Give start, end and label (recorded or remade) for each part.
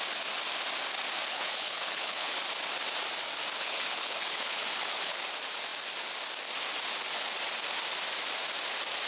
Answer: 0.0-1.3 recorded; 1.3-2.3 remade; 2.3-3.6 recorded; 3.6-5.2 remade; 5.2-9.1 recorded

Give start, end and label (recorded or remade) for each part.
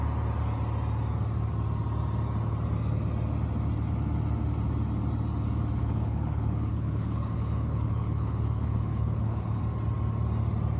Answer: 0.0-5.8 recorded; 5.8-9.6 remade; 9.6-10.8 recorded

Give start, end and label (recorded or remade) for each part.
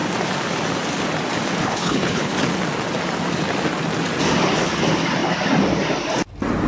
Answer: 0.0-1.6 recorded; 1.6-2.3 remade; 2.3-6.7 recorded